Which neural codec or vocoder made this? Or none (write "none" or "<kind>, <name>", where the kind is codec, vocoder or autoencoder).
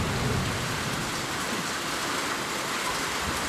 none